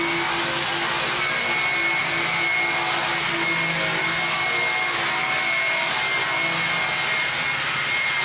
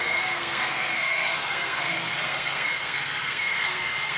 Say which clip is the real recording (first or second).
first